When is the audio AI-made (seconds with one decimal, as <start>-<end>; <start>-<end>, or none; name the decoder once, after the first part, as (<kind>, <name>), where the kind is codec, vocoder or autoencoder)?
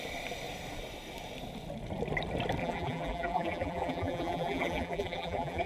2.6-5.7 (vocoder, BigVGAN v2)